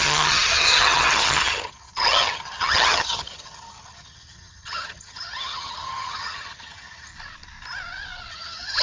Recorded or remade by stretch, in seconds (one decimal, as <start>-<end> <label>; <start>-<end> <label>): 0.0-7.1 remade; 7.1-8.3 recorded; 8.3-8.8 remade